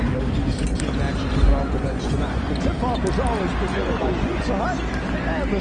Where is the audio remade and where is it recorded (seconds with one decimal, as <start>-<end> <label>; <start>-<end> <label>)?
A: 0.0-1.6 recorded; 1.6-2.5 remade; 2.5-3.7 recorded; 3.7-4.5 remade; 4.5-5.6 recorded